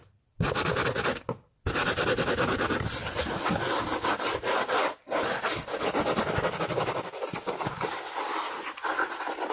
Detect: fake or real real